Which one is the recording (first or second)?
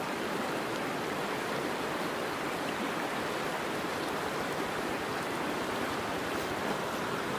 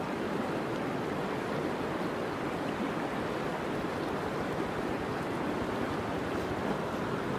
second